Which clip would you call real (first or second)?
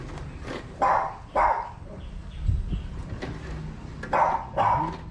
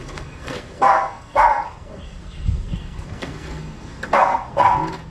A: first